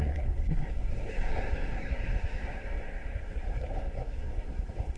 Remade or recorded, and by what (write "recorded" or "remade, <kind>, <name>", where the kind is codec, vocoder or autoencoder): remade, codec, SNAC